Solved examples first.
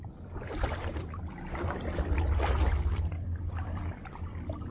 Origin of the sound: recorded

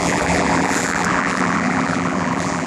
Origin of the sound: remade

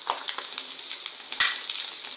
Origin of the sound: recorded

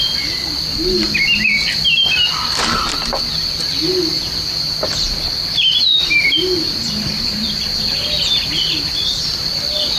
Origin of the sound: recorded